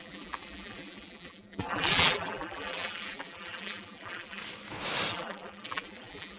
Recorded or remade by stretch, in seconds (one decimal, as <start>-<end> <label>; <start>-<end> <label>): 0.0-4.4 remade; 4.4-5.1 recorded; 5.1-6.4 remade